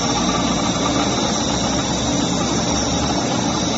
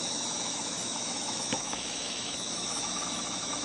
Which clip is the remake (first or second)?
second